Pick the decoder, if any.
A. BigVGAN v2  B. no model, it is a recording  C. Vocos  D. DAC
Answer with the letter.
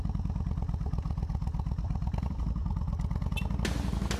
B